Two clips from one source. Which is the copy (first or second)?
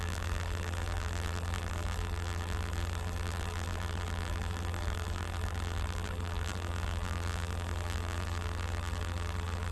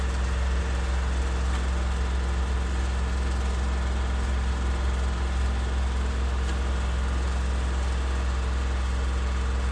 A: first